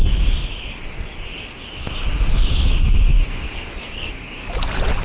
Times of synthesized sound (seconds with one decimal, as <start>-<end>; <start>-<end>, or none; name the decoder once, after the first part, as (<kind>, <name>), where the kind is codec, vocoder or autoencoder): 3.3-4.1 (codec, SNAC)